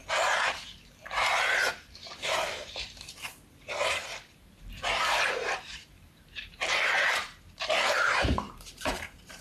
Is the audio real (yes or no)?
no